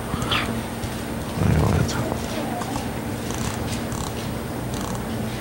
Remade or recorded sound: recorded